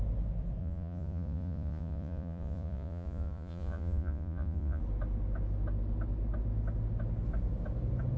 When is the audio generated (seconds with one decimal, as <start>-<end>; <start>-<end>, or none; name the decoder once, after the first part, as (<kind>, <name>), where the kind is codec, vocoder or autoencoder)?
0.6-4.8 (vocoder, Vocos)

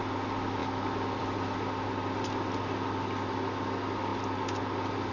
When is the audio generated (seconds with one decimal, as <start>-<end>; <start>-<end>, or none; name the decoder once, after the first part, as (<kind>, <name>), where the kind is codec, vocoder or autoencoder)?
none